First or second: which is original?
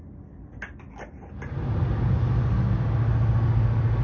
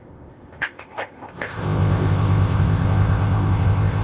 first